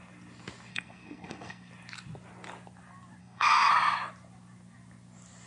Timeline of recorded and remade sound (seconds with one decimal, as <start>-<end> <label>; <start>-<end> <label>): 0.0-0.7 recorded; 0.7-1.7 remade; 1.7-3.2 recorded; 3.2-3.7 remade; 3.7-5.5 recorded